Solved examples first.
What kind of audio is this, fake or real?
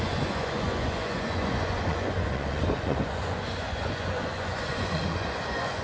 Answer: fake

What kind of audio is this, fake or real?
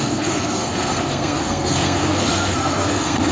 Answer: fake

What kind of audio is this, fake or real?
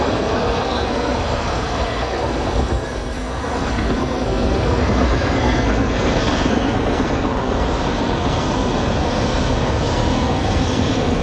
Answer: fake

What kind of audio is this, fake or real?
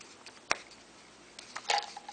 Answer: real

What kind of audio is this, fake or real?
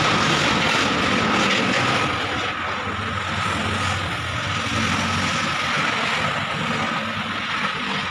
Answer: real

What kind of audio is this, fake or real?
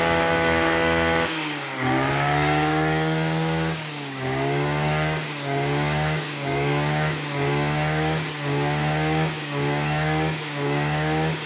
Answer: fake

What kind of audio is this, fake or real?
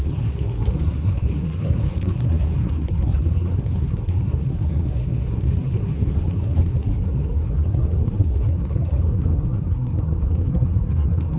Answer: fake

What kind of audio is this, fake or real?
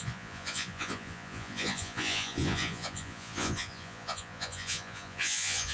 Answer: fake